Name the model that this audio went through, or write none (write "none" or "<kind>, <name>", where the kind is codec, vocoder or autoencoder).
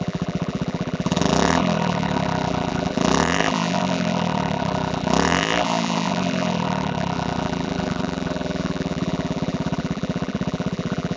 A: vocoder, BigVGAN v2